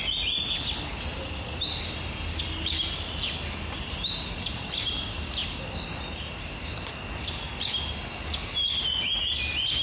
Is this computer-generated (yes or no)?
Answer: no